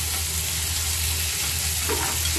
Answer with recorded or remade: recorded